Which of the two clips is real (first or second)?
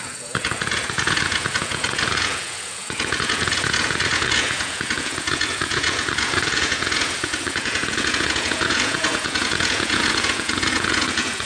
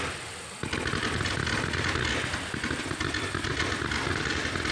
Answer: second